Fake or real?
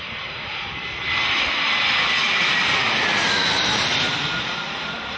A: fake